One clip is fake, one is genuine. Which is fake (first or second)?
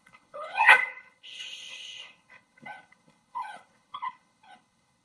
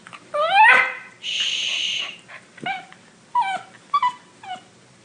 first